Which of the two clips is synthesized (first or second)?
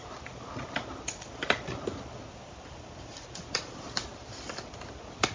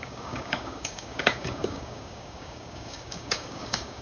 second